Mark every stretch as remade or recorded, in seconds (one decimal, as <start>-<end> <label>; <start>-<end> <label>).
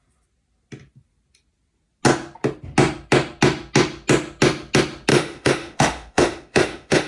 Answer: 0.0-5.1 recorded; 5.1-7.1 remade